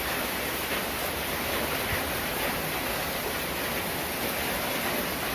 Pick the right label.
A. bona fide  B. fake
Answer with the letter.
A